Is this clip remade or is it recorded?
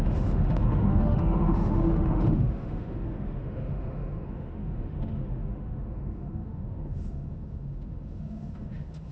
remade